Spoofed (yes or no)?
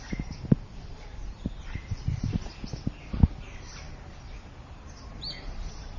no